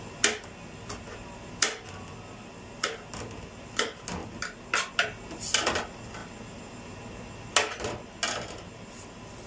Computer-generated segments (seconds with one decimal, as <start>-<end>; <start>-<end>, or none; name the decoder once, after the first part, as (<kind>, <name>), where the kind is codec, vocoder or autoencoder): none